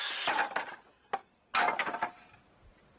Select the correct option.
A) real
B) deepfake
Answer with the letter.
A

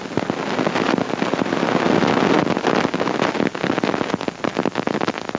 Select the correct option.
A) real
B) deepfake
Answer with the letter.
A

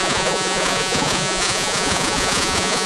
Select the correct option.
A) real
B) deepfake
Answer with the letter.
B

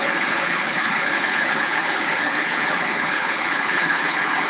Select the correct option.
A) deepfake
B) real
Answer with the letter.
A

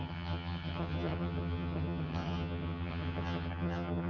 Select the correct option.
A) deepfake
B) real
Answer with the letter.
A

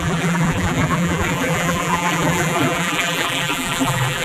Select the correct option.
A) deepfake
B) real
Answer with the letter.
A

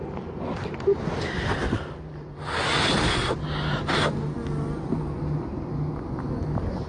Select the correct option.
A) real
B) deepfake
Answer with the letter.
A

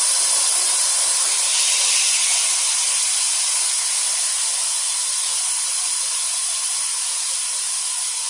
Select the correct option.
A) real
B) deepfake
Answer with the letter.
A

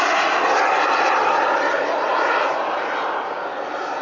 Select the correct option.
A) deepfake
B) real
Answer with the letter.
B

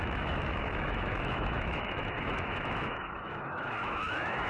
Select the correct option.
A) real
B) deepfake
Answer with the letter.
B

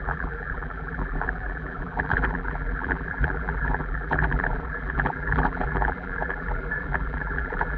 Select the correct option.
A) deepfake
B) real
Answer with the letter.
A